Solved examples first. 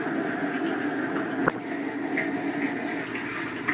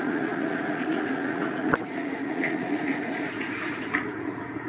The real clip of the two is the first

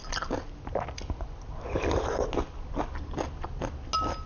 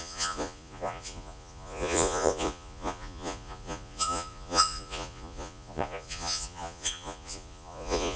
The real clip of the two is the first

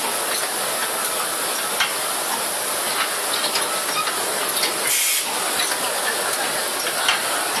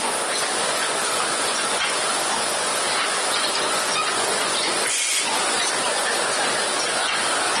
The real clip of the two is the first